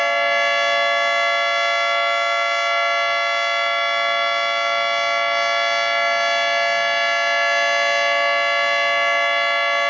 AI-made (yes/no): no